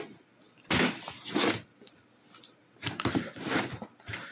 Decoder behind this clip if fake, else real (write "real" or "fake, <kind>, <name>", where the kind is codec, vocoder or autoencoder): real